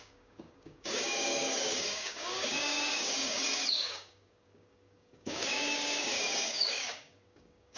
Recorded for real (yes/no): no